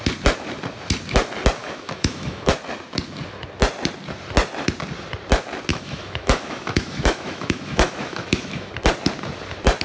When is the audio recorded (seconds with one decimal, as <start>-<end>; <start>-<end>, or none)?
0.0-1.6; 2.5-5.7; 8.7-9.8